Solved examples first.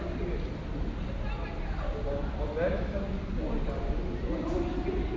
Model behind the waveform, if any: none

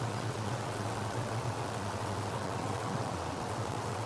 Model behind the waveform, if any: vocoder, WaveNeXt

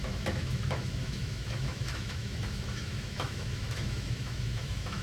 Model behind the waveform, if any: autoencoder, DAC-VAE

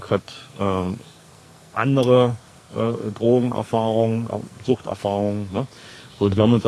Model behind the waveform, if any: codec, SNAC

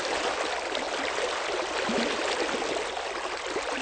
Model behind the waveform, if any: none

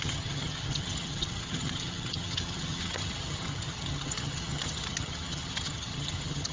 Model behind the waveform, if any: vocoder, HiFi-GAN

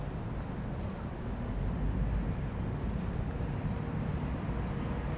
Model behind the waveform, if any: none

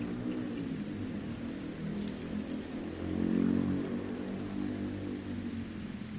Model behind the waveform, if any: none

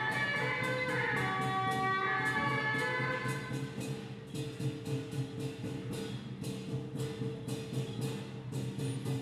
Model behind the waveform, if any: none